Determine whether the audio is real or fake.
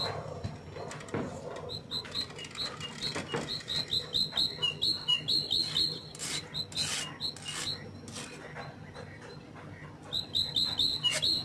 real